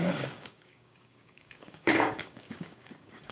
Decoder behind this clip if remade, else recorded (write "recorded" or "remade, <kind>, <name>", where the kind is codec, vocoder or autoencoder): remade, codec, DAC